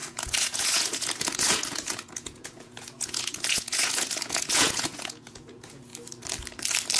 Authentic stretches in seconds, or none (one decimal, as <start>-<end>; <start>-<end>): 5.9-7.0